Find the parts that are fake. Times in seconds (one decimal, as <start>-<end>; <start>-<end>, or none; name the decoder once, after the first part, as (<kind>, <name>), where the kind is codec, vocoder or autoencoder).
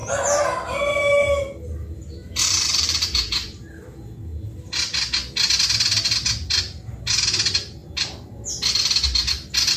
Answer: 2.2-3.7 (vocoder, BigVGAN v2); 7.8-8.5